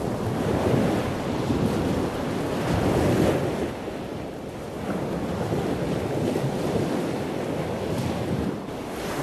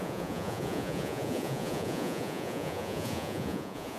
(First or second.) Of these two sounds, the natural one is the first